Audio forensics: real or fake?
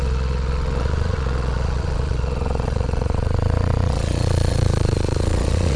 fake